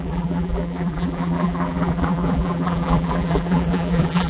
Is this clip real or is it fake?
fake